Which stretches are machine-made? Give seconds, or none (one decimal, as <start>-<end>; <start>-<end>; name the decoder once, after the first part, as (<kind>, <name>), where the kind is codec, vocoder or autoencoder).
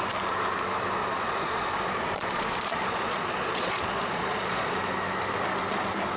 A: 1.0-4.7 (vocoder, Vocos)